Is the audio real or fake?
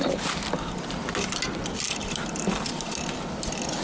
real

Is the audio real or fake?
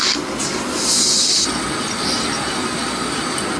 real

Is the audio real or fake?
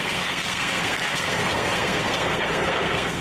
fake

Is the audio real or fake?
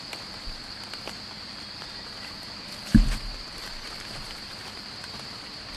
real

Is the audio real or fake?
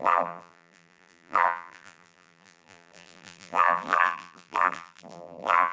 fake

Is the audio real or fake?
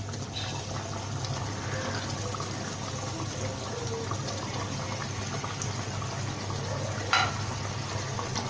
real